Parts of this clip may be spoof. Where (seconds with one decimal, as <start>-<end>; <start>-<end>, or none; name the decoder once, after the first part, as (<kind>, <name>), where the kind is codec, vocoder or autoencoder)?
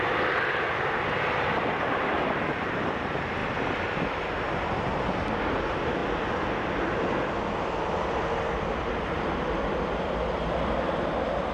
none